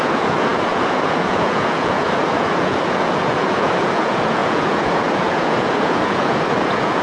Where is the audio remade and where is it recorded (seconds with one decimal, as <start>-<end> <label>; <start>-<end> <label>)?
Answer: 0.0-7.0 remade